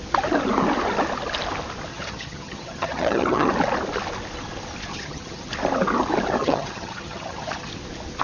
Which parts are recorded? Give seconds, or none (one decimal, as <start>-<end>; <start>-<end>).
0.0-1.9; 3.5-4.9; 5.5-6.4; 7.7-8.2